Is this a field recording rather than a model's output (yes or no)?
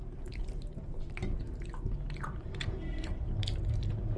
no